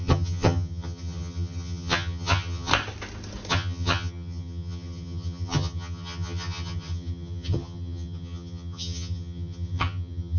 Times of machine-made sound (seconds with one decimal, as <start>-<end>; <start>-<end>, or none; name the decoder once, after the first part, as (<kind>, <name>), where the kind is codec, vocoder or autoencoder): 0.0-2.7 (vocoder, HiFi-GAN); 3.5-10.4